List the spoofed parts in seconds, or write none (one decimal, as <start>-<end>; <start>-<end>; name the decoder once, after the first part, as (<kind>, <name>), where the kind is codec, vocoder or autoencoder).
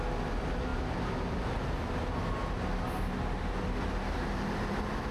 none